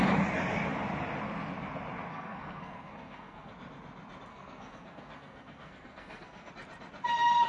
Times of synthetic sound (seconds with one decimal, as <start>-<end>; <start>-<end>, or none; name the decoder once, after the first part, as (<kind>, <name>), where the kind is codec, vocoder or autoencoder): 2.1-3.5 (codec, SNAC); 4.3-6.5